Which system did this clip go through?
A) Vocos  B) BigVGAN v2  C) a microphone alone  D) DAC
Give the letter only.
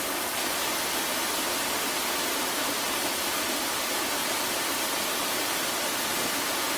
C